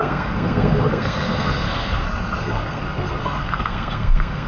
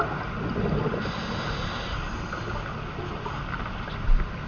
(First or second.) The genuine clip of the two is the second